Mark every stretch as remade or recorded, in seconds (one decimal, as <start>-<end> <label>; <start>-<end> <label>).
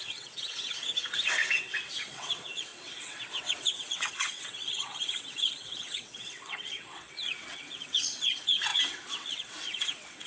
0.0-10.3 remade